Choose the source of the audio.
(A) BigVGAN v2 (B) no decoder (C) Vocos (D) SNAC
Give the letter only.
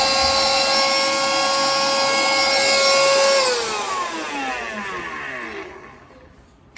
B